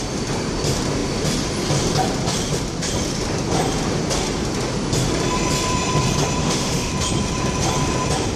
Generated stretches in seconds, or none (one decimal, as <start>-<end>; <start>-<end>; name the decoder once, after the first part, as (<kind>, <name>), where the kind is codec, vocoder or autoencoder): 6.4-6.9 (autoencoder, DAC-VAE)